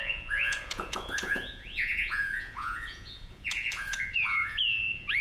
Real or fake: fake